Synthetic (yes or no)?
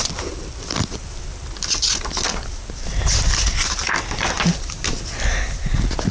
no